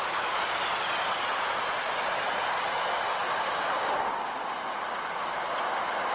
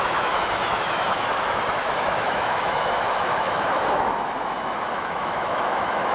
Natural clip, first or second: first